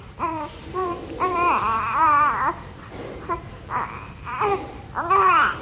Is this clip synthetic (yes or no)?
yes